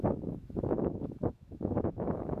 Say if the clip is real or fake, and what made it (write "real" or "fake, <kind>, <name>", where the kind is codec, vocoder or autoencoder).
fake, autoencoder, DAC-VAE